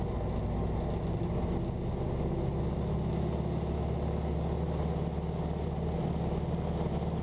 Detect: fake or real real